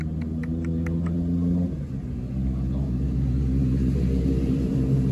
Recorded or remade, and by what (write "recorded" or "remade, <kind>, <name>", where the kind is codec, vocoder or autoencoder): recorded